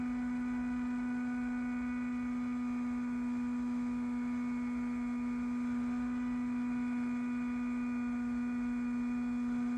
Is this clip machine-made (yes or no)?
no